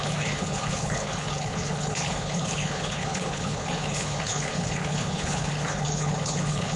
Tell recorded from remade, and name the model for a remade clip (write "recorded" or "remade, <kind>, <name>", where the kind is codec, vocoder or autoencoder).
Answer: remade, codec, HILCodec